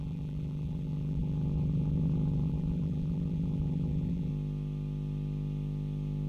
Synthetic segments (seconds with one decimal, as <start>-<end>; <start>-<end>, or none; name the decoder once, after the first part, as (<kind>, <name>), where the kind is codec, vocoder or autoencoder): 0.0-4.3 (vocoder, BigVGAN v2)